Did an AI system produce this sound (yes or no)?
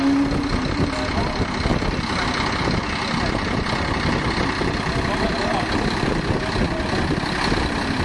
no